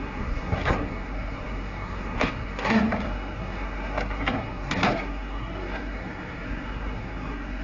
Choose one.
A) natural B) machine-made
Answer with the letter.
B